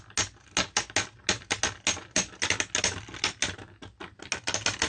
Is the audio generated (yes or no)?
no